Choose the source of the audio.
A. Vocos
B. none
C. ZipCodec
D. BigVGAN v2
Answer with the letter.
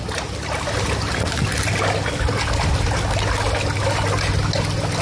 B